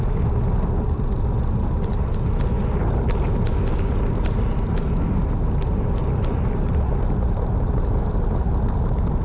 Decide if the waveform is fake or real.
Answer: real